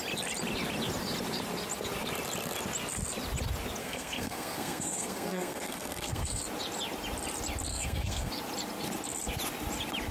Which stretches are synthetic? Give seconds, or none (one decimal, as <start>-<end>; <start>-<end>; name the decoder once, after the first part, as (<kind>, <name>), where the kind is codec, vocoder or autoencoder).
3.8-6.4 (codec, SNAC); 7.7-8.3